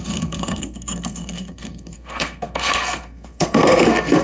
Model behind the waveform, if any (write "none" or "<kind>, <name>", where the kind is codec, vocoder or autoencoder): codec, SNAC